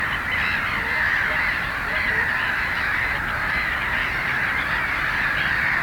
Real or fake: fake